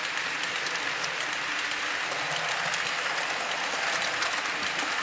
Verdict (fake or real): real